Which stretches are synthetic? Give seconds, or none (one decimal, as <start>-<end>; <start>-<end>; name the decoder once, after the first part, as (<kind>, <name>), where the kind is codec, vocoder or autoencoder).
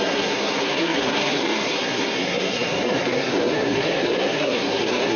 0.0-5.2 (codec, SNAC)